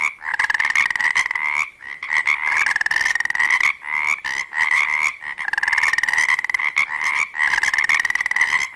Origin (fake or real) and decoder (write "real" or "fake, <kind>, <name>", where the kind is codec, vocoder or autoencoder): real